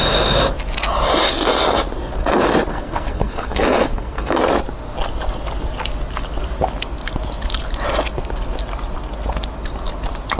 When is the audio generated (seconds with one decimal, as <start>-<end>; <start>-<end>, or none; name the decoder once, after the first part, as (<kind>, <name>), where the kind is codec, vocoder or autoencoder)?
2.7-4.4 (codec, SNAC)